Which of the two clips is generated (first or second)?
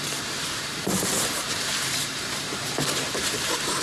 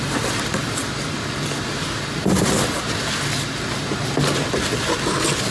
first